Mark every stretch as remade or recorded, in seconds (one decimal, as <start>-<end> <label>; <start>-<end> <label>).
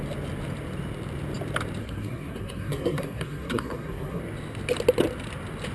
0.0-1.8 recorded; 1.8-4.2 remade; 4.2-5.7 recorded